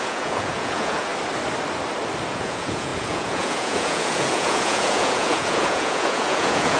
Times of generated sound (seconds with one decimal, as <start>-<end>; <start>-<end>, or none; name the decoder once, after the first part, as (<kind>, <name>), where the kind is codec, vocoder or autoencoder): 0.0-1.1 (vocoder, Vocos); 2.3-6.8